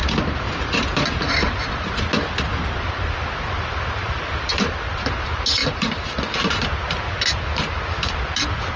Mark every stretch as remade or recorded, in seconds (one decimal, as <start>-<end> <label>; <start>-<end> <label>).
0.0-2.0 remade; 2.0-5.6 recorded; 5.6-6.5 remade; 6.5-8.8 recorded